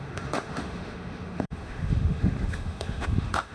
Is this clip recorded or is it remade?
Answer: remade